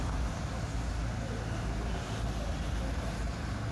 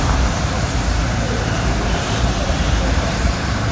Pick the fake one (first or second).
second